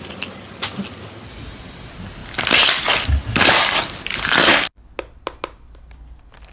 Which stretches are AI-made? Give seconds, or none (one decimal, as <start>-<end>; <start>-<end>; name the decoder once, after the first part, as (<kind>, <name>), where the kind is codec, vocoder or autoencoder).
none